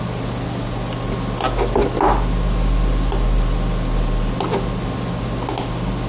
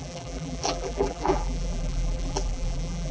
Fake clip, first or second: second